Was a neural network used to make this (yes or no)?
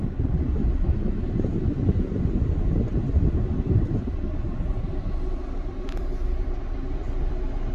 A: no